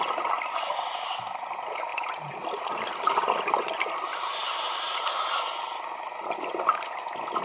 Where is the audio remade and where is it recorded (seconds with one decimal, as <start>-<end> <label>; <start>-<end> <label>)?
0.0-7.4 recorded